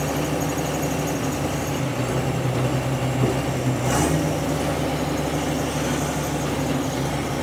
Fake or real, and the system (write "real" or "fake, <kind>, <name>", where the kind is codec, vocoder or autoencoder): real